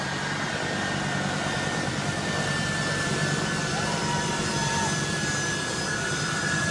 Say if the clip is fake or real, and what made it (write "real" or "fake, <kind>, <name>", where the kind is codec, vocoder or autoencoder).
fake, vocoder, BigVGAN v2